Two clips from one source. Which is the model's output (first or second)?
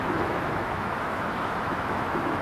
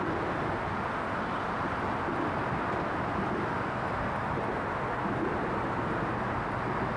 first